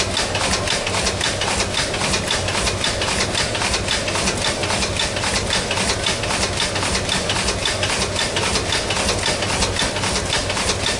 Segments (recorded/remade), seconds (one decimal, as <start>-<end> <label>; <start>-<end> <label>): 0.0-11.0 recorded